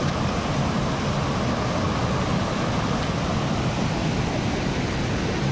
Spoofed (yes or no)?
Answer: no